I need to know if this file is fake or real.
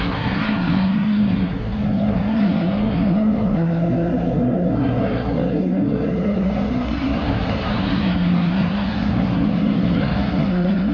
fake